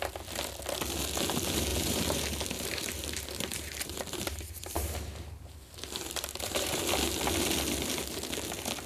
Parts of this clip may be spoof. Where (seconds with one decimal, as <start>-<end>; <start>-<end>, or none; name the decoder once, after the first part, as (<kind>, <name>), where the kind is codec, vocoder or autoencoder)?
1.7-6.8 (vocoder, BigVGAN v2)

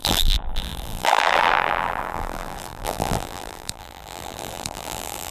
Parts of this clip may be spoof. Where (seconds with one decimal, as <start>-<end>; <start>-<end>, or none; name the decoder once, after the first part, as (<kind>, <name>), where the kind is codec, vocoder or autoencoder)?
0.0-5.3 (vocoder, BigVGAN v2)

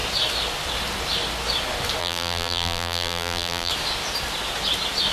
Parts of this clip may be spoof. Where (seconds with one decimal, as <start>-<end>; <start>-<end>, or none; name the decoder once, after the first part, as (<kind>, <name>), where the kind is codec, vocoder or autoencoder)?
2.0-3.7 (vocoder, BigVGAN v2)

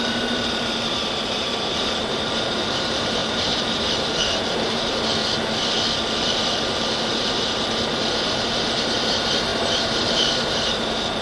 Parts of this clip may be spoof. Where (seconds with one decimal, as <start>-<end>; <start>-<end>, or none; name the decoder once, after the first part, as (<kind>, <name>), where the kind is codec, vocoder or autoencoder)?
0.0-5.2 (vocoder, BigVGAN v2); 6.2-11.2

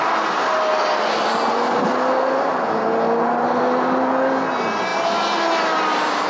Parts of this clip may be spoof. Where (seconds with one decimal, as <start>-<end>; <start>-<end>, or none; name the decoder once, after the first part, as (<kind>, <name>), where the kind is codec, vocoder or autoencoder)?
none

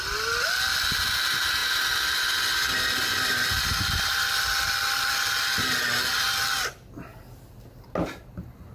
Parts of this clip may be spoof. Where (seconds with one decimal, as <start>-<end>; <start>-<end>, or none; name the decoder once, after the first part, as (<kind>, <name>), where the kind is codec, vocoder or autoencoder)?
none